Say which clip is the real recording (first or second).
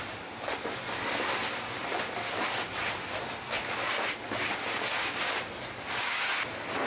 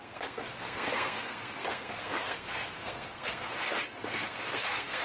first